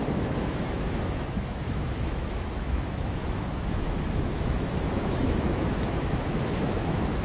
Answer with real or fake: fake